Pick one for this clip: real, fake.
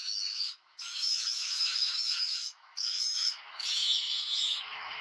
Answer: fake